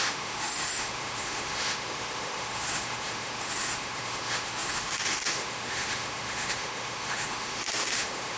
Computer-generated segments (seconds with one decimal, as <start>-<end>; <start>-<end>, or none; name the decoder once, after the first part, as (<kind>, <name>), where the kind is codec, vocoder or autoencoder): 0.0-8.4 (autoencoder, DAC-VAE)